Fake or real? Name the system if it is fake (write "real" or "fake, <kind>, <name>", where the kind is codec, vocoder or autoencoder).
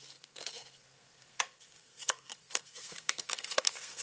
fake, codec, SNAC